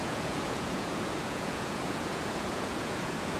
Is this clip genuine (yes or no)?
no